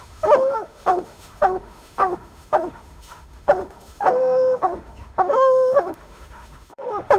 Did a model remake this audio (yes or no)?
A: yes